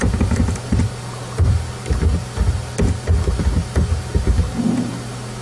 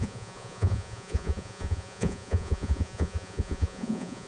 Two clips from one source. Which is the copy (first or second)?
second